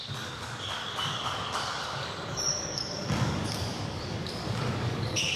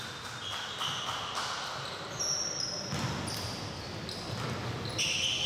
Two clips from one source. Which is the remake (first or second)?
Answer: first